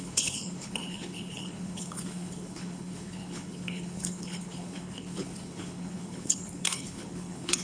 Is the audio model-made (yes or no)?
yes